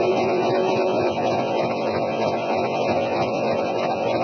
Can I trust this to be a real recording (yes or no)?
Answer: no